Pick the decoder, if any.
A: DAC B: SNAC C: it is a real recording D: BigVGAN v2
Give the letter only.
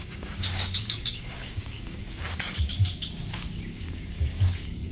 A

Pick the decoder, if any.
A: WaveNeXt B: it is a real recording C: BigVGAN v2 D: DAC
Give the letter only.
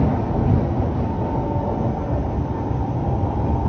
B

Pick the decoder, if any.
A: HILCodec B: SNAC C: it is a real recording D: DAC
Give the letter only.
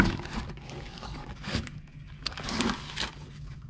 D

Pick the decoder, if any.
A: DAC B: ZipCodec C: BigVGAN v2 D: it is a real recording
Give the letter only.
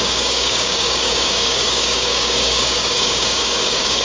A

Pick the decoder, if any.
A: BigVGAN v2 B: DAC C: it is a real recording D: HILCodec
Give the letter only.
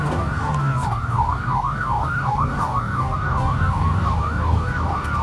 B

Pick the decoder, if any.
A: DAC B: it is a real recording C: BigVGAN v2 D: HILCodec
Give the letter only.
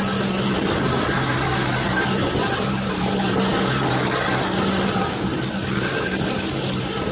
B